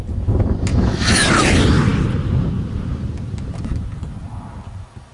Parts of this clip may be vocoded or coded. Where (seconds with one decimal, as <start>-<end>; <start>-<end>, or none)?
0.7-1.3